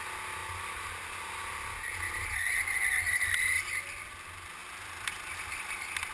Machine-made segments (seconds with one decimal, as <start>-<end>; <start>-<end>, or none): none